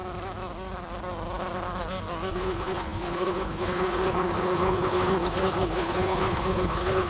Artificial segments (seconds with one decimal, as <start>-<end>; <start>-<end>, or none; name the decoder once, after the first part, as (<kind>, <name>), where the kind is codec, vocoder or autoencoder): 2.3-7.1 (codec, HILCodec)

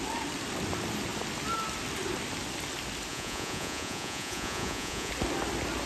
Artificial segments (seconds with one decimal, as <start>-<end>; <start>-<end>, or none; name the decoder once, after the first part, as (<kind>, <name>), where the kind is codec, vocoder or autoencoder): 3.1-5.1 (vocoder, Vocos)

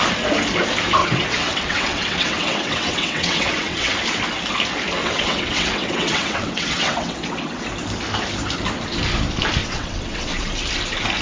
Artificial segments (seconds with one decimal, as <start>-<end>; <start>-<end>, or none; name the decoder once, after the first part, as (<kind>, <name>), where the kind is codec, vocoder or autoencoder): 1.0-3.9 (vocoder, WaveNeXt); 5.0-7.6; 9.6-10.5

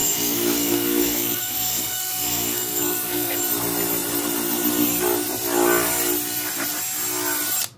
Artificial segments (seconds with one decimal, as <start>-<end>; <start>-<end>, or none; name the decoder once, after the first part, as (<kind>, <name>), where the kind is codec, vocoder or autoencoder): 0.0-3.4 (codec, SNAC)

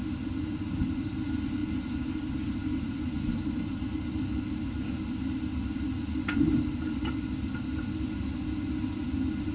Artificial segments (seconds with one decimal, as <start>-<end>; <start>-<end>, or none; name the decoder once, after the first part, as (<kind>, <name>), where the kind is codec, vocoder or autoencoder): none

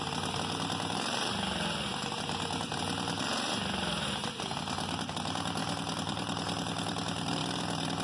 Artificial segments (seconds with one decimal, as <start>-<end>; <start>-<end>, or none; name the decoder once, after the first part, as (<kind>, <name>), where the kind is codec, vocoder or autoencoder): 2.7-4.5 (vocoder, BigVGAN v2); 5.6-7.4

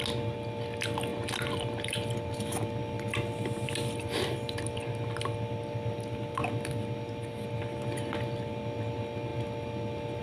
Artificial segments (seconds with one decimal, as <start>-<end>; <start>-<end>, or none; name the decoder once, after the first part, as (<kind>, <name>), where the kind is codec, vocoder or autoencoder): 1.1-2.4 (vocoder, BigVGAN v2)

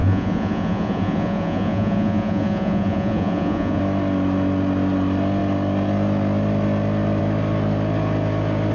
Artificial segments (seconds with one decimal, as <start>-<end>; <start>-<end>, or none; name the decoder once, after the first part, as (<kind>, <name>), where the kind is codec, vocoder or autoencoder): 0.0-3.8 (vocoder, Vocos)